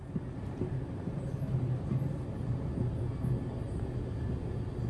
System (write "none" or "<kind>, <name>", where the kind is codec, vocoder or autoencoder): none